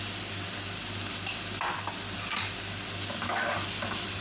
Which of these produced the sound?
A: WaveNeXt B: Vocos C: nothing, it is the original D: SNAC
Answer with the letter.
C